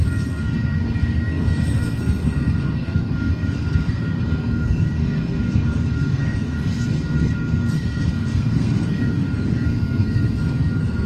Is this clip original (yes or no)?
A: no